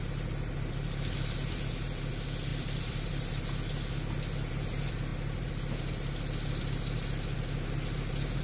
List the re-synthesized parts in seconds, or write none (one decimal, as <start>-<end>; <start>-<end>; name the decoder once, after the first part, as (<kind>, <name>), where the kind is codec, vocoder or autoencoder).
2.5-3.3 (vocoder, BigVGAN v2)